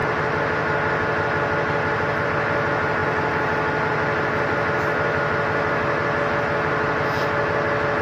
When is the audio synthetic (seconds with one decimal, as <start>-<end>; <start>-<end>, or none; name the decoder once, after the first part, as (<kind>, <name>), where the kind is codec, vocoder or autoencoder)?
none